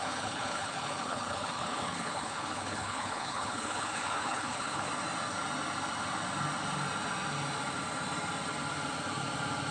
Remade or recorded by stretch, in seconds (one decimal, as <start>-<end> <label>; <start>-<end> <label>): 0.0-4.9 remade; 4.9-9.7 recorded